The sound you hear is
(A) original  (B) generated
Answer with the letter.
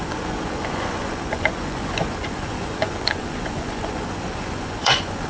B